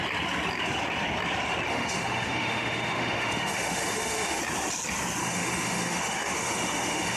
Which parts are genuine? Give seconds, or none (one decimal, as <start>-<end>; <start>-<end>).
0.0-1.7; 4.4-5.2